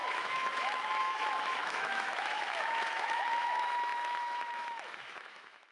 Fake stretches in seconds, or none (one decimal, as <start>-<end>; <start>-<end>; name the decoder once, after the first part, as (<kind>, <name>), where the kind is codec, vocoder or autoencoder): 0.0-5.7 (autoencoder, DAC-VAE)